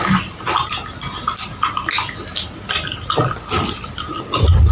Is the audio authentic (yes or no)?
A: yes